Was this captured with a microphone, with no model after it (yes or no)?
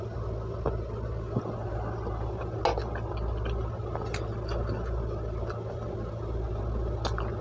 yes